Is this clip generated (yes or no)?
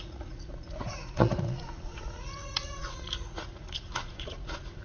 yes